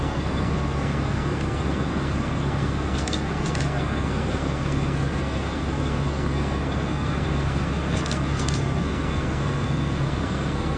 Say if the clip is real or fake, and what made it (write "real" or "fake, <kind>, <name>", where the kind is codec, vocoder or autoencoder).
fake, codec, SNAC